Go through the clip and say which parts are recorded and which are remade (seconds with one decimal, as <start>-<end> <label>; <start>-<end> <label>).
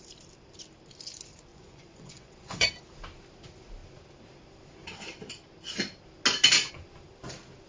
0.0-1.5 recorded; 1.5-2.7 remade; 2.7-7.7 recorded